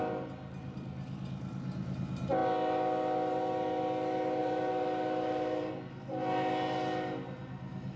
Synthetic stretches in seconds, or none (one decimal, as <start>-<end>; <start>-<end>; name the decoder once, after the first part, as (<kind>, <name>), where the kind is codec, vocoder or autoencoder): 4.4-5.7 (vocoder, BigVGAN v2)